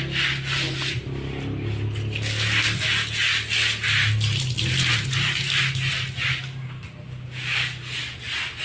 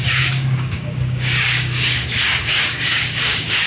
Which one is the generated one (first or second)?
second